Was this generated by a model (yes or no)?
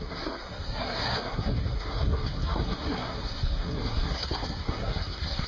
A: yes